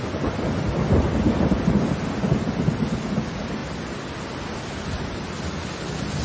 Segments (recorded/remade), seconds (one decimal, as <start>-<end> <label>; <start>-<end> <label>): 0.0-6.2 recorded